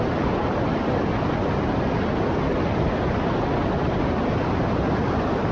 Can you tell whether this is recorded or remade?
recorded